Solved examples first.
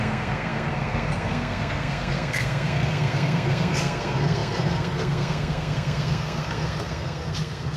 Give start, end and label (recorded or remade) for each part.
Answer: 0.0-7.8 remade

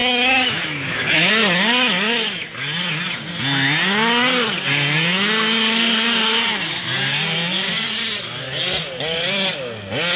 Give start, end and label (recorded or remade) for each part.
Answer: 0.0-1.3 remade; 1.3-10.2 recorded

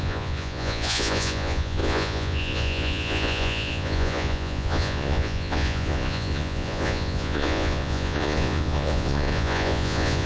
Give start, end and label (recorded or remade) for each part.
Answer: 0.0-10.3 remade

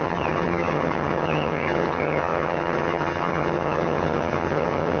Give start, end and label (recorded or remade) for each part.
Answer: 0.0-5.0 remade

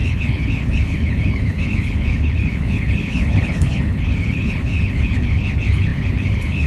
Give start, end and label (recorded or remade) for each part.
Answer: 0.0-6.7 remade